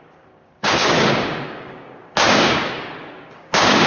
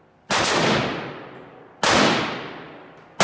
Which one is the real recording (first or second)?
second